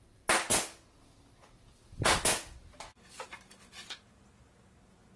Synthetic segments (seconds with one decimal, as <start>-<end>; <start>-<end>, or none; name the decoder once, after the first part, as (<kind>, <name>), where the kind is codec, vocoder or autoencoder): none